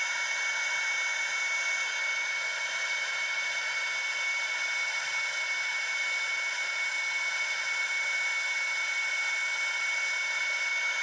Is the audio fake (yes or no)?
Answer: no